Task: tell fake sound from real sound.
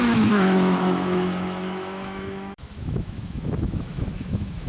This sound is fake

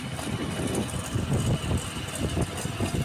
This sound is real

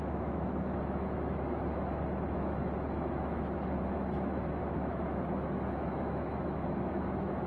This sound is fake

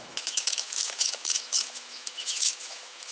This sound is fake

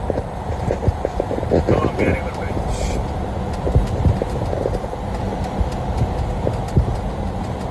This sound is real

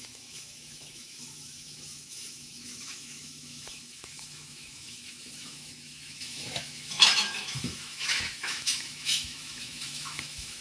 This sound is fake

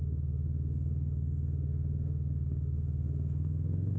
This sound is fake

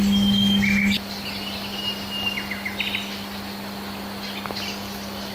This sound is real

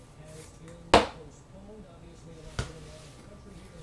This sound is real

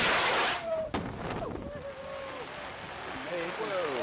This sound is real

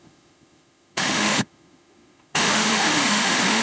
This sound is fake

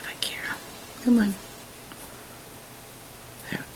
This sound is real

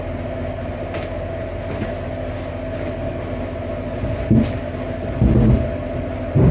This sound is real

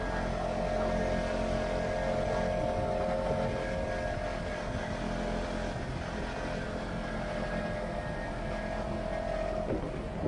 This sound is real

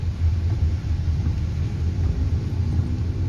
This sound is real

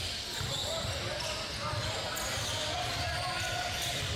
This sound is real